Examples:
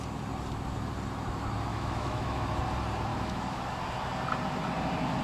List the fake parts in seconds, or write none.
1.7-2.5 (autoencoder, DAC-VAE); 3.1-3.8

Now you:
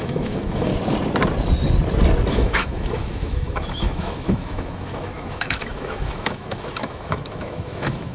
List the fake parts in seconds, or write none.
0.0-0.7 (autoencoder, DAC-VAE); 2.3-8.1

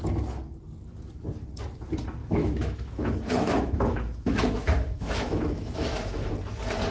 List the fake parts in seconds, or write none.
2.2-6.3 (autoencoder, DAC-VAE)

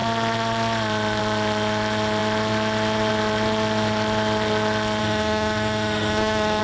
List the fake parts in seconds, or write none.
5.0-6.6 (autoencoder, DAC-VAE)

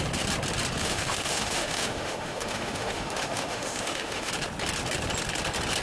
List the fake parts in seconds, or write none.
0.8-4.3 (autoencoder, DAC-VAE)

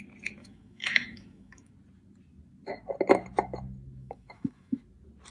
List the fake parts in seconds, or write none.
0.4-1.7 (autoencoder, DAC-VAE); 4.0-4.8